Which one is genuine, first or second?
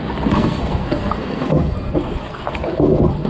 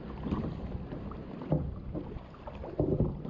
second